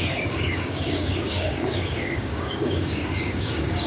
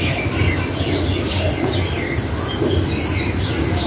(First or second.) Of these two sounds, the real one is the second